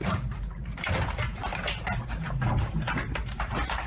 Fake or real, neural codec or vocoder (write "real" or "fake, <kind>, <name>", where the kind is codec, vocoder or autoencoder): fake, vocoder, BigVGAN v2